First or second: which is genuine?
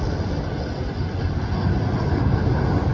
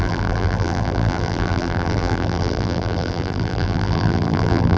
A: first